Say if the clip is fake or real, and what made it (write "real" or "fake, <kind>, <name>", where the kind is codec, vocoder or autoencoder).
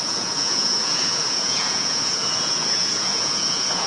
fake, vocoder, Vocos